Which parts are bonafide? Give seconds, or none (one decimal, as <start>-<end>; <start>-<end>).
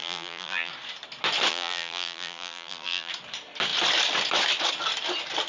0.7-1.5; 3.1-5.5